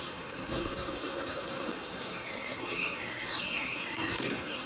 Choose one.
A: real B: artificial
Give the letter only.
B